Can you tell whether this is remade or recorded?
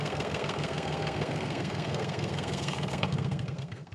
remade